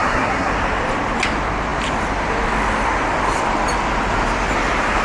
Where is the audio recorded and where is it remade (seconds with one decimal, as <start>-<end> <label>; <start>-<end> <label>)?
0.0-0.5 remade; 0.5-5.0 recorded